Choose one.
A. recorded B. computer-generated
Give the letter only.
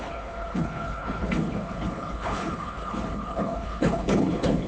B